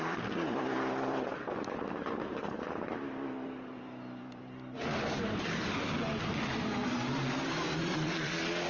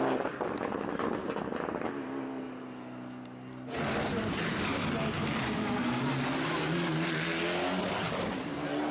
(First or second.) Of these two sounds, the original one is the second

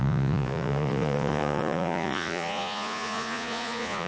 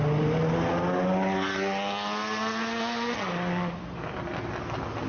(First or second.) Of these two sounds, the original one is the second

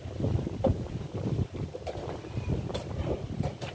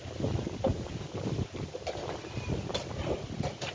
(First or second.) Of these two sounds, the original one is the second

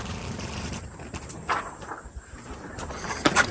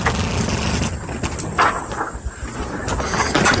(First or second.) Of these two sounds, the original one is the second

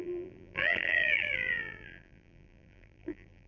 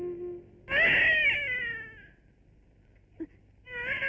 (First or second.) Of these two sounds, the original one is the second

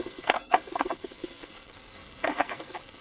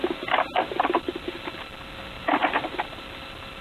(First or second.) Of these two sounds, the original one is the second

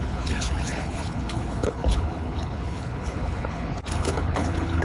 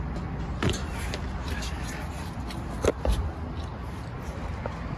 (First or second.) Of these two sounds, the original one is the second